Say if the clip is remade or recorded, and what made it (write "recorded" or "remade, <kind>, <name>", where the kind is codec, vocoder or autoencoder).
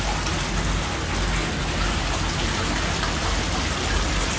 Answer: recorded